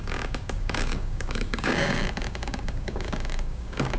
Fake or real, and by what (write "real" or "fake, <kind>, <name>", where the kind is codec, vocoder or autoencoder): fake, codec, DAC